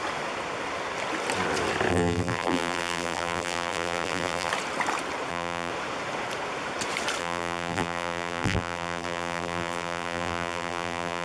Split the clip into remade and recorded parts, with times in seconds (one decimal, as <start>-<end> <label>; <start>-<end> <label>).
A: 0.0-1.9 recorded; 1.9-4.5 remade; 4.5-5.3 recorded; 5.3-5.7 remade; 5.7-7.2 recorded; 7.2-11.2 remade